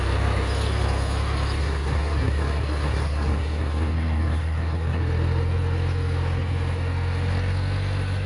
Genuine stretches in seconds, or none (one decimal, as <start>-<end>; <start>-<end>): 0.0-1.6; 5.0-8.3

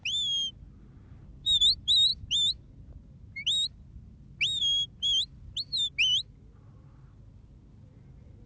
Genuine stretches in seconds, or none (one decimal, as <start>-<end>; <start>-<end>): 0.0-8.5

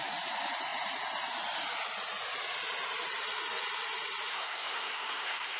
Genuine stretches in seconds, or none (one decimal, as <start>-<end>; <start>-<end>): 0.0-4.3

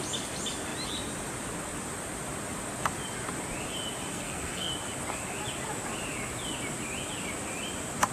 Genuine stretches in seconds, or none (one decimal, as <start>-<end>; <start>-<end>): 0.0-4.1; 4.7-8.1

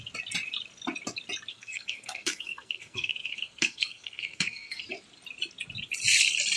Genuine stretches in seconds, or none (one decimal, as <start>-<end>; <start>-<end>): 0.0-1.5; 4.8-6.6

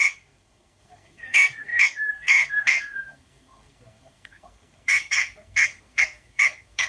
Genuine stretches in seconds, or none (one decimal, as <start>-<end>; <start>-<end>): none

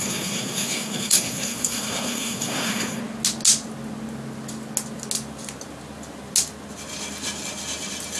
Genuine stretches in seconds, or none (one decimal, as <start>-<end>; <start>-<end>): 3.0-8.2

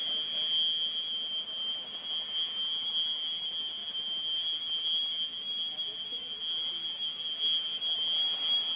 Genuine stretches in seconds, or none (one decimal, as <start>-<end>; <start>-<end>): 0.0-8.8